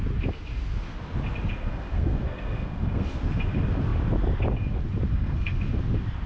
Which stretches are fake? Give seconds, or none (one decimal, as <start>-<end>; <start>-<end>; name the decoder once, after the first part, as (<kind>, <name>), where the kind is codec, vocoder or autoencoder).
1.5-3.2 (codec, SNAC); 5.1-5.7